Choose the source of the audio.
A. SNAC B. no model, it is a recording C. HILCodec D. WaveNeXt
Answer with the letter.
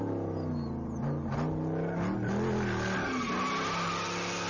B